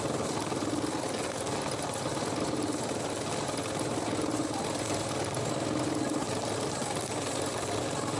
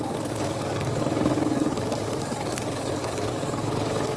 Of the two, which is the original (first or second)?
first